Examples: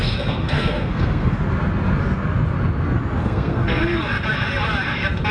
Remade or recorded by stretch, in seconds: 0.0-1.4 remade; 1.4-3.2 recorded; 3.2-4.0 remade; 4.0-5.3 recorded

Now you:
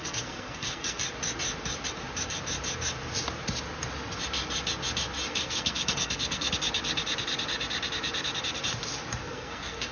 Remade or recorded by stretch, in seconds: 0.0-1.0 remade; 1.0-5.3 recorded; 5.3-6.5 remade; 6.5-9.2 recorded; 9.2-9.9 remade

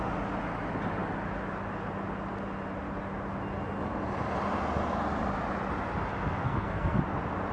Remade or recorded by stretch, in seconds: 0.0-6.4 recorded; 6.4-7.0 remade; 7.0-7.5 recorded

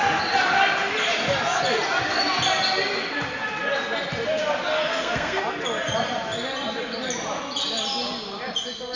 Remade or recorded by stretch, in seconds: 0.0-4.7 recorded; 4.7-5.4 remade; 5.4-9.0 recorded

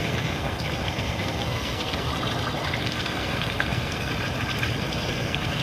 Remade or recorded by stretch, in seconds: 0.0-2.1 remade; 2.1-2.8 recorded; 2.8-4.1 remade; 4.1-4.7 recorded; 4.7-5.6 remade

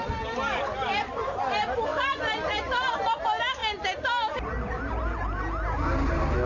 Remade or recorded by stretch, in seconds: 0.0-6.5 recorded

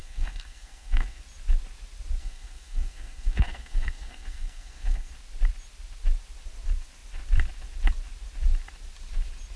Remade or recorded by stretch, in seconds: 0.0-1.2 remade; 1.2-2.2 recorded; 2.2-5.1 remade; 5.1-9.6 recorded